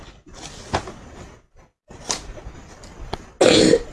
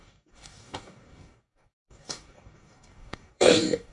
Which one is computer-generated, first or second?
second